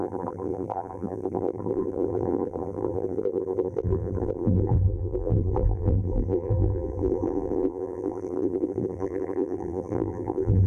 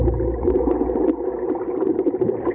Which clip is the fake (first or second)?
first